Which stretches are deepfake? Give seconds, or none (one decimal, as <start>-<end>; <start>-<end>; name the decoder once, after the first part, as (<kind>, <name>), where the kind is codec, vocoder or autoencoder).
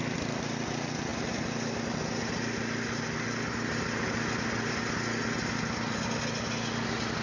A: none